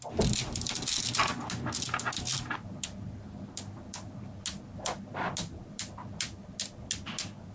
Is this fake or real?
real